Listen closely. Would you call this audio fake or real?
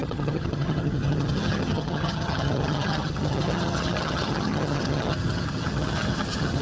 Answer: fake